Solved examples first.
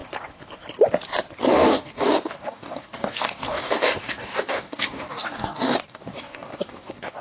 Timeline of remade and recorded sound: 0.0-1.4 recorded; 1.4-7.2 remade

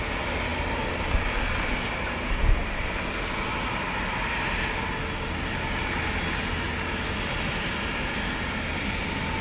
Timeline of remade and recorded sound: 0.0-9.4 recorded

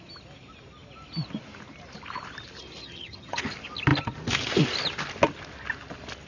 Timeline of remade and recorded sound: 0.0-2.8 recorded; 2.8-3.4 remade; 3.4-6.3 recorded